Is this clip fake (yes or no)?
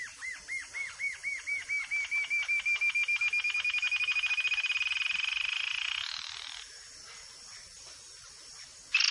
no